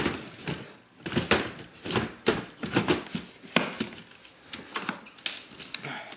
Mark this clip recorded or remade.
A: recorded